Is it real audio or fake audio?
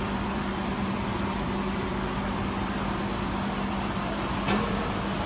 fake